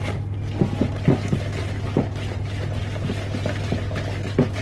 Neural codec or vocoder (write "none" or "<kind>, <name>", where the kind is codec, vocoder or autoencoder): none